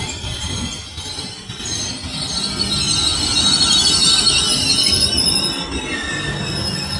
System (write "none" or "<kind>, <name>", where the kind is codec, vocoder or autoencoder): none